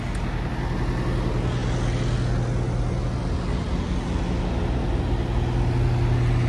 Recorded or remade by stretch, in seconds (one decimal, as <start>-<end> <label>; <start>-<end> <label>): 0.0-6.5 recorded